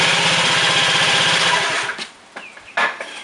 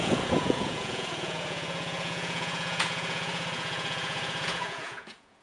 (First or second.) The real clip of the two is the first